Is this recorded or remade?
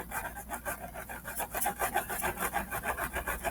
recorded